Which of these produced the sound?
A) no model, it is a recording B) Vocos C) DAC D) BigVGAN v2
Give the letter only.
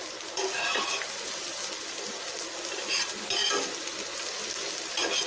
A